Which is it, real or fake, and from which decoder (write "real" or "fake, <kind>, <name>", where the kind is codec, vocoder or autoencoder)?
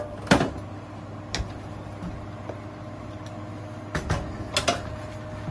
real